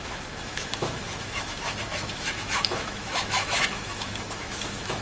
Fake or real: fake